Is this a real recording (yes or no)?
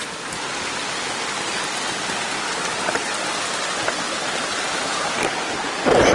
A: yes